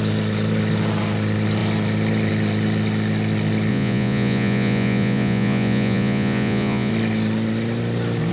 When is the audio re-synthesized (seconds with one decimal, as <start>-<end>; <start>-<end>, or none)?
3.7-6.9